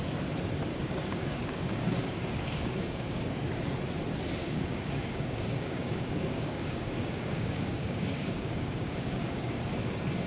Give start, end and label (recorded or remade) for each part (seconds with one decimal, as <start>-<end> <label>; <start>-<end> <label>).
0.0-0.7 recorded; 0.7-3.5 remade; 3.5-4.4 recorded; 4.4-9.6 remade; 9.6-10.3 recorded